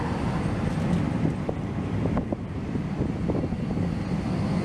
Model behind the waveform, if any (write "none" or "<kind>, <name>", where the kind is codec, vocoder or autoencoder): none